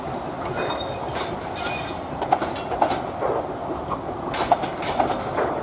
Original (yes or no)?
yes